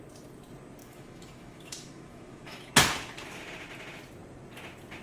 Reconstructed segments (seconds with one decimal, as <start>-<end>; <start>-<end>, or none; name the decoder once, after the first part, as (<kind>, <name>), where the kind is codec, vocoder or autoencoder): 0.8-2.7 (autoencoder, DAC-VAE)